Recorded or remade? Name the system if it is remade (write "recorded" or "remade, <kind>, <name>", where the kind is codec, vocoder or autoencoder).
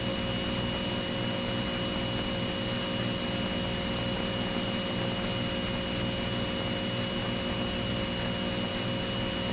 recorded